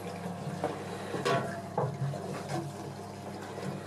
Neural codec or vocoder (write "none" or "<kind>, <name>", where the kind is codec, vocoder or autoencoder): none